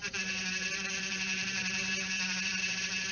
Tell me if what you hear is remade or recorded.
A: remade